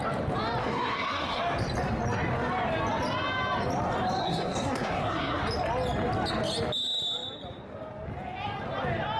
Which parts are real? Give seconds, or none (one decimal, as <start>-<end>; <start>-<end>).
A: 0.0-0.6; 1.4-4.2; 5.4-9.2